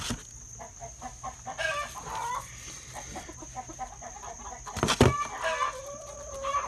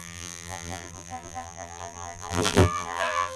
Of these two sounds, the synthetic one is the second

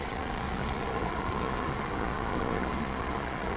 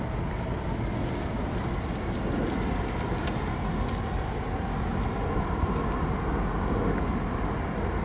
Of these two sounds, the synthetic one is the first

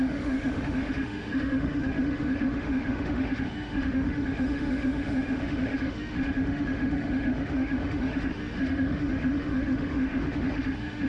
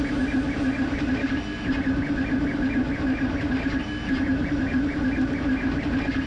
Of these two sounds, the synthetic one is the first